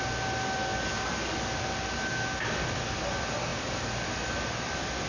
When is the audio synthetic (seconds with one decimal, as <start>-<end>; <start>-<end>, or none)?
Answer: none